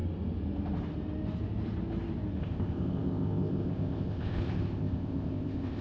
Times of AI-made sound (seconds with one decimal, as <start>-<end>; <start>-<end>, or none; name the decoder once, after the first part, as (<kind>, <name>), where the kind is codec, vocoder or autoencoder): 2.4-5.8 (codec, ZipCodec)